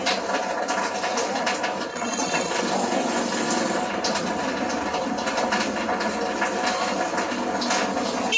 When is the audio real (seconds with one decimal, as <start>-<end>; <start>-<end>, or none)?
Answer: 0.0-1.9; 2.5-8.4